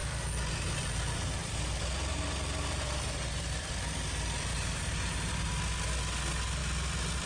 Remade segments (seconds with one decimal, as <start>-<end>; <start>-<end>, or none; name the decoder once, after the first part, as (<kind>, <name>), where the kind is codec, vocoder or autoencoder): 4.5-5.5 (vocoder, BigVGAN v2)